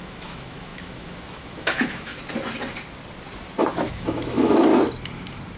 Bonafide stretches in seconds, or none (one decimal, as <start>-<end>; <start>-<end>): 2.1-3.7; 4.7-5.6